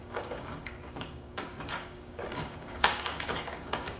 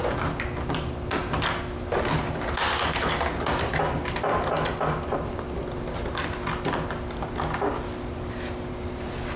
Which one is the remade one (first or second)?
first